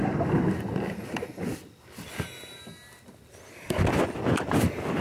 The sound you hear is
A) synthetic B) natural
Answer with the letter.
B